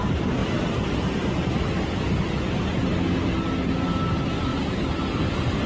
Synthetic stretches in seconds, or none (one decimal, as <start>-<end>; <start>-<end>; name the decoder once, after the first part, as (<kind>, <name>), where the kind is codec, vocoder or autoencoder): none